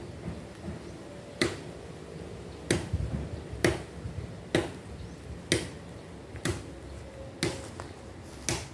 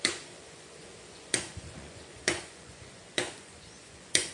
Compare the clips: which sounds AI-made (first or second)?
second